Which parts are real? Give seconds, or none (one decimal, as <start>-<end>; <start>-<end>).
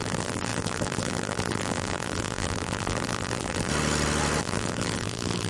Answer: 3.7-4.4